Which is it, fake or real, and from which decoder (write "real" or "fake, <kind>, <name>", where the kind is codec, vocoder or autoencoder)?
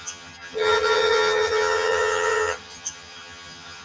fake, vocoder, HiFi-GAN